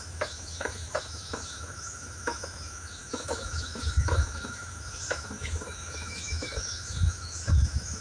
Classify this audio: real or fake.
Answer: fake